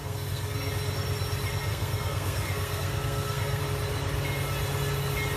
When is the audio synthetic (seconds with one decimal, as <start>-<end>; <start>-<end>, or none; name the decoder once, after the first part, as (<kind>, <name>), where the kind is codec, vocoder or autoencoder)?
0.0-0.7 (codec, SNAC); 1.7-3.6